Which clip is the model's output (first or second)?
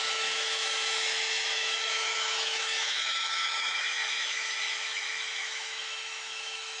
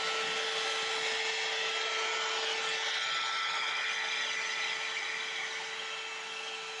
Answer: first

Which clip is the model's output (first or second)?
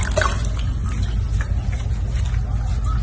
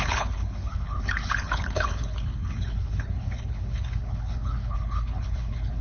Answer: second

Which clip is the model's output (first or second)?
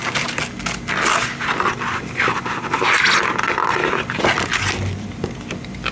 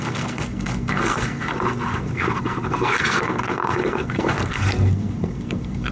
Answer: second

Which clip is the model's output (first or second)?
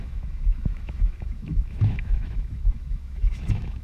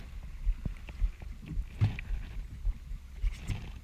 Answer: first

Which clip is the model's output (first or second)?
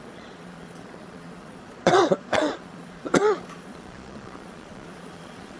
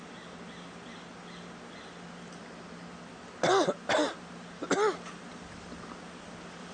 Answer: first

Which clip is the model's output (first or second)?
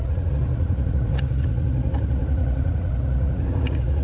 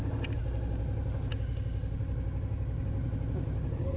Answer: first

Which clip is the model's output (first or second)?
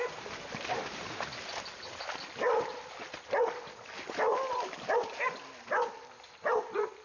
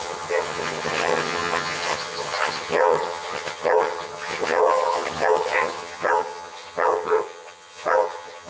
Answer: second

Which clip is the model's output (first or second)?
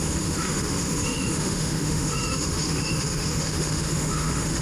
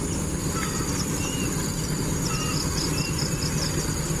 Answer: first